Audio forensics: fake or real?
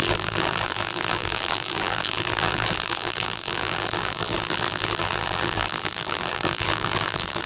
fake